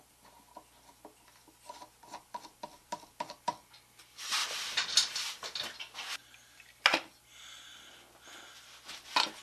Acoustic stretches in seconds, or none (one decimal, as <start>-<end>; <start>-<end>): 0.0-9.4